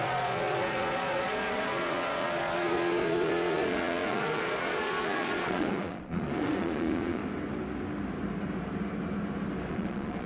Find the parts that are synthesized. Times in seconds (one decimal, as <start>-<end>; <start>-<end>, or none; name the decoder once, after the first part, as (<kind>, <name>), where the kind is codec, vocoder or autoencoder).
0.0-7.2 (vocoder, Vocos); 9.7-10.3